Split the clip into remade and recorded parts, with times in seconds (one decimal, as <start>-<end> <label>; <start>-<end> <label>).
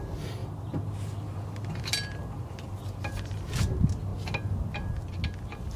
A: 0.0-5.8 recorded